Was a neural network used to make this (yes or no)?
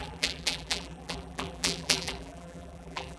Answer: yes